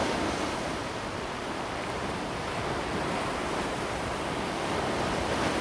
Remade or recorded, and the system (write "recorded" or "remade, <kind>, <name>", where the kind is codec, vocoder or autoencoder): remade, vocoder, BigVGAN v2